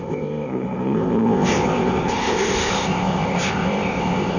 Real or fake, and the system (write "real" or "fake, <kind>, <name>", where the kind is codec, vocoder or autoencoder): fake, codec, ZipCodec